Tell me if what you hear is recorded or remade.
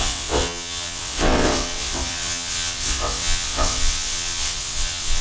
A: remade